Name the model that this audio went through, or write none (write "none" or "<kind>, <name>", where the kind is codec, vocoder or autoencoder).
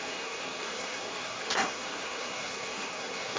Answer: codec, SNAC